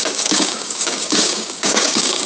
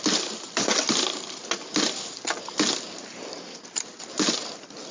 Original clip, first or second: second